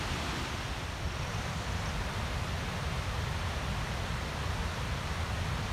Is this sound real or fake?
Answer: real